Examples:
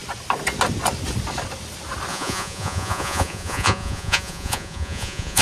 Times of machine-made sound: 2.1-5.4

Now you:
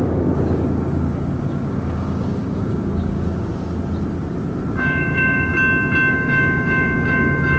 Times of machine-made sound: 0.0-3.5; 4.7-5.5; 6.1-7.6

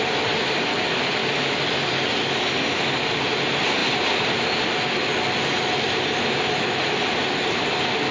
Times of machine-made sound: none

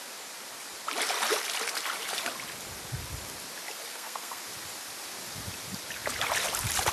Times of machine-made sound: 3.9-4.4

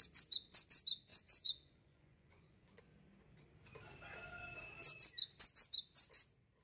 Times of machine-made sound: 1.1-2.8

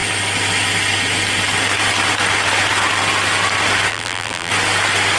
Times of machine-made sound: 3.9-4.5

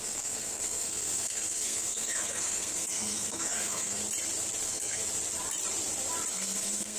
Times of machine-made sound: 0.0-4.0; 4.6-5.0; 6.3-7.0

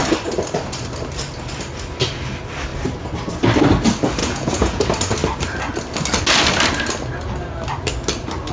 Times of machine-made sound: 4.2-4.8